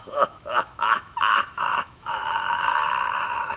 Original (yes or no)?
no